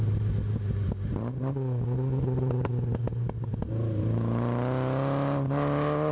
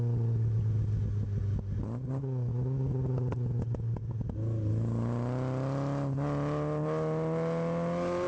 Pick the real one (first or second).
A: second